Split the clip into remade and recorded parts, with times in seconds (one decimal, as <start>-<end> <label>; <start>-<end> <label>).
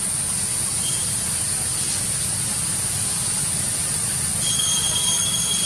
0.0-5.7 recorded